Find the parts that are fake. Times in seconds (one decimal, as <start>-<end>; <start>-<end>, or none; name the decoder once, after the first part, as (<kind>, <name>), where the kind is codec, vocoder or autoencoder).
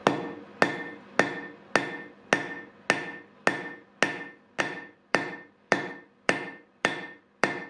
4.6-7.7 (vocoder, BigVGAN v2)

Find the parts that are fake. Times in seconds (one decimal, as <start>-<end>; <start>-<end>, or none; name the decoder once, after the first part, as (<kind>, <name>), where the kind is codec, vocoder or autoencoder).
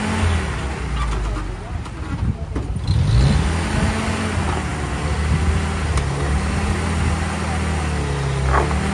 none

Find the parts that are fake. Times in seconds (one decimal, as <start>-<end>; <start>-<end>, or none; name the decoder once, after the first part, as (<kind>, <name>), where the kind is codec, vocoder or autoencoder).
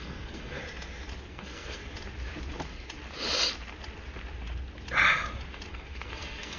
0.0-0.6 (codec, SNAC); 1.3-1.8; 5.7-6.6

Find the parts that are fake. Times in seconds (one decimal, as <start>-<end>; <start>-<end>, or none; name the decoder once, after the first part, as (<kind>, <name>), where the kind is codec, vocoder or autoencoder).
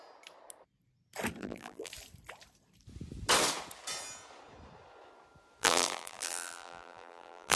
1.4-1.9 (vocoder, BigVGAN v2); 5.6-7.6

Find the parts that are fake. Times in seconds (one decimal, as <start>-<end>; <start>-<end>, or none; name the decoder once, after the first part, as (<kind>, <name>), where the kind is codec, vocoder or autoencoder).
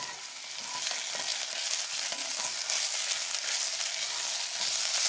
none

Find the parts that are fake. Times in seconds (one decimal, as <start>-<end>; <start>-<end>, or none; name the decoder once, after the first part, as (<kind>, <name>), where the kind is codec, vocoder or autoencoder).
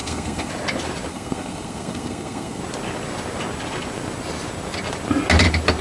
0.0-0.5 (codec, SNAC); 1.1-2.6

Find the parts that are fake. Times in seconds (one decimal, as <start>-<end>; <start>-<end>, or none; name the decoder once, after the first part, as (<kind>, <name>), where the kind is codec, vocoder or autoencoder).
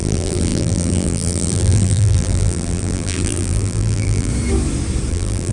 0.0-4.3 (vocoder, BigVGAN v2); 5.1-5.5